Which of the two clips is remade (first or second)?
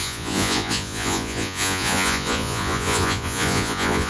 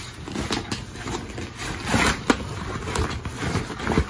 first